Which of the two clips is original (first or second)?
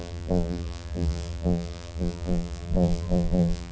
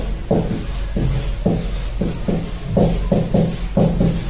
second